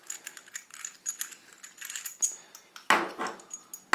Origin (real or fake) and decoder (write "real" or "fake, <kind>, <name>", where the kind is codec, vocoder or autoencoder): real